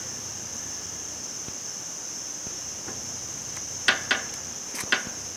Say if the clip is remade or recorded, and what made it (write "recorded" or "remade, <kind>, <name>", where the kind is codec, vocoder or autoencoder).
recorded